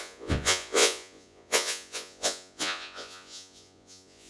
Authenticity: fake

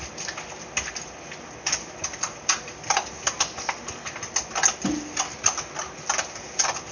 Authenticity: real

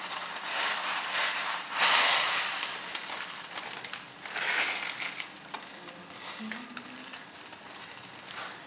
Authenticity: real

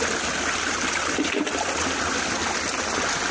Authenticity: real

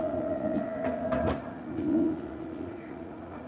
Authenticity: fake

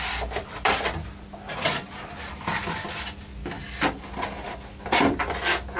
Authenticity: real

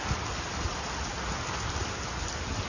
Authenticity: real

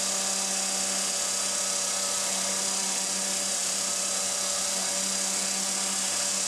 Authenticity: real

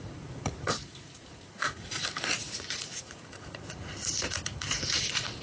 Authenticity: fake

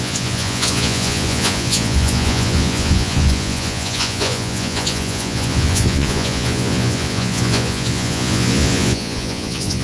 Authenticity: fake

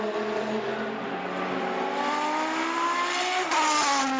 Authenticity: real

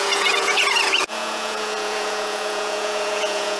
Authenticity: fake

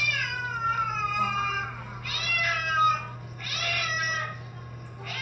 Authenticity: real